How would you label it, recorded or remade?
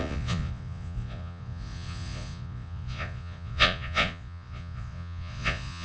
remade